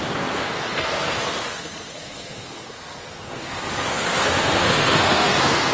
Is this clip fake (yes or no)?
yes